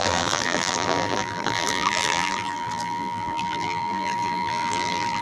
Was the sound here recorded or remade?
remade